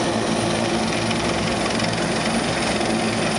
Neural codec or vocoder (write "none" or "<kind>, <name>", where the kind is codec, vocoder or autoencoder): none